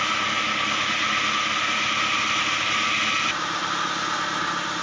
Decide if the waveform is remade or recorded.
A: recorded